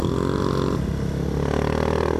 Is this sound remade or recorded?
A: recorded